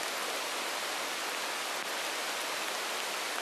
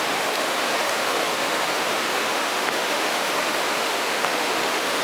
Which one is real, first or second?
first